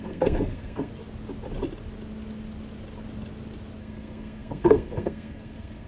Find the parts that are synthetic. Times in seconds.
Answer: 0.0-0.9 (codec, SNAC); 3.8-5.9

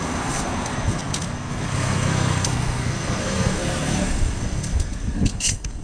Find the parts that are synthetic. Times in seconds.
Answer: 0.0-5.8 (codec, SNAC)

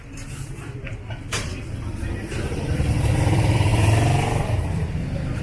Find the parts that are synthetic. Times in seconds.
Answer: 0.0-5.4 (vocoder, BigVGAN v2)

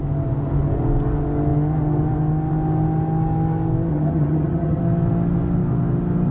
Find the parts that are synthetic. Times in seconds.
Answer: 3.9-4.8 (vocoder, HiFi-GAN)

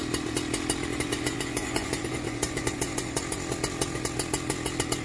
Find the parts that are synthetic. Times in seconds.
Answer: 0.9-3.2 (vocoder, Vocos)

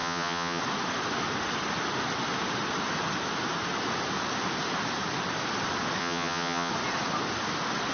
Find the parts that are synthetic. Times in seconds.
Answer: 0.0-0.6 (vocoder, HiFi-GAN); 6.0-6.7

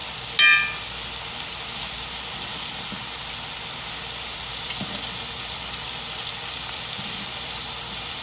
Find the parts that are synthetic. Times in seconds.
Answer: 4.5-8.2 (vocoder, BigVGAN v2)